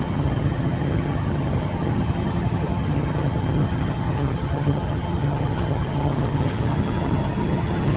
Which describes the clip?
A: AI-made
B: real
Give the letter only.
A